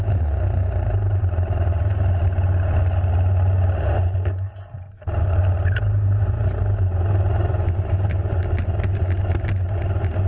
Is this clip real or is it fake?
real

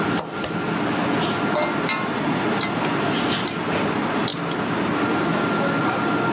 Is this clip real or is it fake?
real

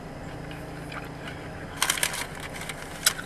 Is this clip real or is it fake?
real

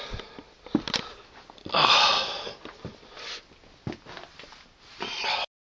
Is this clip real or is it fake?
real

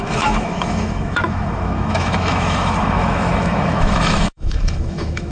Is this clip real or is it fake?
fake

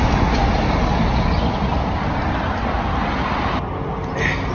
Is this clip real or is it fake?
real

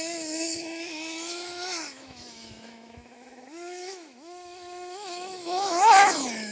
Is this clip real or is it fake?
fake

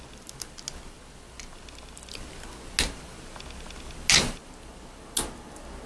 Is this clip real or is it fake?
real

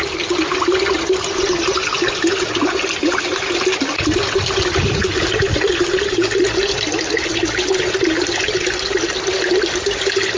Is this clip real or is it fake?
real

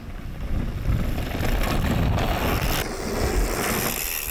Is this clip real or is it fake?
real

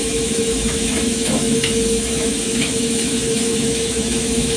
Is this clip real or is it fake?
fake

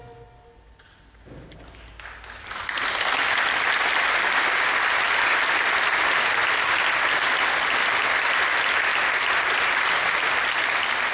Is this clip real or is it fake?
real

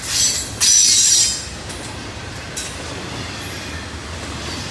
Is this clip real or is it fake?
real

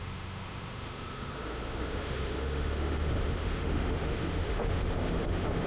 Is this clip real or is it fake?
fake